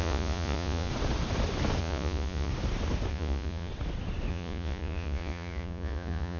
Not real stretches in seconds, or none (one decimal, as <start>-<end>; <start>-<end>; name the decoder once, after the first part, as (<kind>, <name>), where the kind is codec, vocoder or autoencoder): 0.0-0.9 (vocoder, Vocos); 1.8-2.5; 3.1-3.7; 4.3-6.4